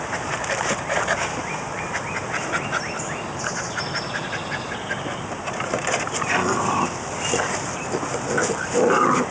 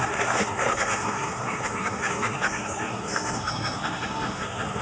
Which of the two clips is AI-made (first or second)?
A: second